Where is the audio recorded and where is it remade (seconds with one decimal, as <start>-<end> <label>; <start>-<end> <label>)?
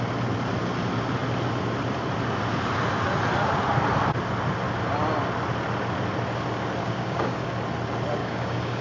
0.0-6.8 recorded; 6.8-7.5 remade; 7.5-8.2 recorded; 8.2-8.8 remade